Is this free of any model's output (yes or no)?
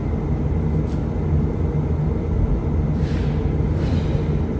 yes